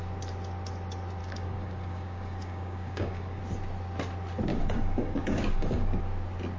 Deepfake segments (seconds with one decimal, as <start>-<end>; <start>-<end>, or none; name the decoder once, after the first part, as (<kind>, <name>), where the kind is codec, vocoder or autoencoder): 1.2-3.4 (codec, DAC); 4.5-6.0